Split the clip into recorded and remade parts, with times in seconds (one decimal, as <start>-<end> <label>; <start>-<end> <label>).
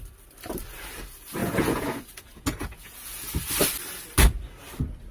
0.0-1.4 recorded; 1.4-3.4 remade; 3.4-5.1 recorded